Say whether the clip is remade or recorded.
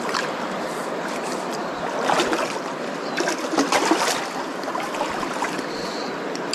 remade